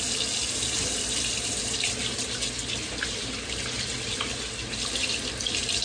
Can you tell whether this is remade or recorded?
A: recorded